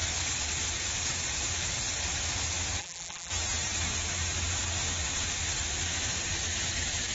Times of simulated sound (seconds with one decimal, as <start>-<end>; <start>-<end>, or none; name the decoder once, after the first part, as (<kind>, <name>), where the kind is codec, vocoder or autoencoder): 2.8-3.3 (vocoder, BigVGAN v2)